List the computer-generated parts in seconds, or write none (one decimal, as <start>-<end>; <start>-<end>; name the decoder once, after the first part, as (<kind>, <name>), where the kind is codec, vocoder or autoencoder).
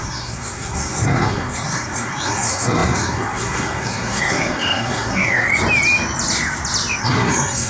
0.0-5.5 (codec, SNAC); 7.0-7.7